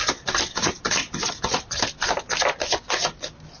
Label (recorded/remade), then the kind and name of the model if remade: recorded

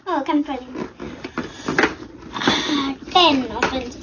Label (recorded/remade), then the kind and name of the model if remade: recorded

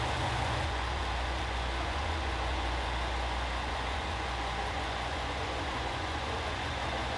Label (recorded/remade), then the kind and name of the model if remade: remade, vocoder, Vocos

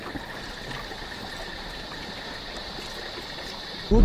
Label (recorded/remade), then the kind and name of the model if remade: recorded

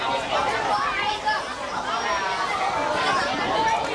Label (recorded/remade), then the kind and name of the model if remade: recorded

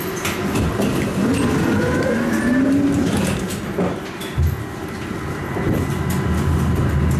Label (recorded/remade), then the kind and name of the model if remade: recorded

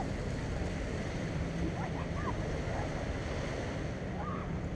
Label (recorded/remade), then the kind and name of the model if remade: recorded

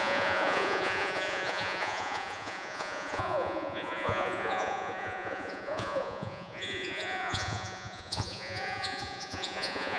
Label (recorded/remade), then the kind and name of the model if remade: remade, vocoder, Vocos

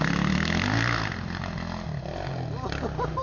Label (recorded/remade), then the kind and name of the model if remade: recorded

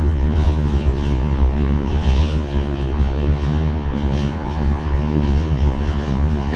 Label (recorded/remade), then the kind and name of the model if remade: remade, vocoder, Vocos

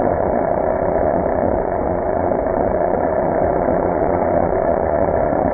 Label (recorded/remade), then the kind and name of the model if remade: remade, vocoder, Vocos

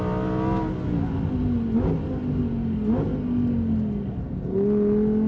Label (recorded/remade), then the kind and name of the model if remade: recorded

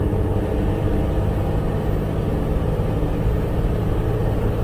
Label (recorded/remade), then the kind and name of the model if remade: recorded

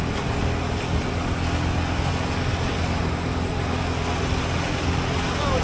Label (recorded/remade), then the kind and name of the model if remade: recorded